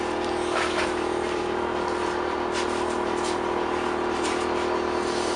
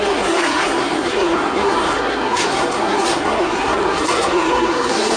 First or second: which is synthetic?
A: second